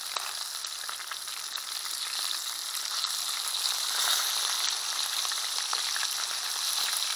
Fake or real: real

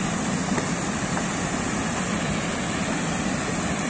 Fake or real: real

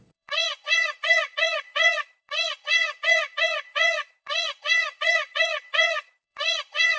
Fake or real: fake